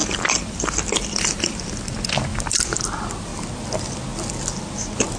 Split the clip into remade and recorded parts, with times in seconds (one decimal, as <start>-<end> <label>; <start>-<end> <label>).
0.0-1.2 remade; 1.2-2.3 recorded; 2.3-2.9 remade; 2.9-5.2 recorded